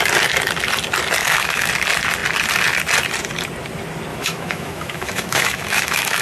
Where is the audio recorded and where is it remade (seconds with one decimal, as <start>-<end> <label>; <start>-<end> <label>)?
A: 0.0-1.2 recorded; 1.2-1.7 remade; 1.7-4.1 recorded; 4.1-6.2 remade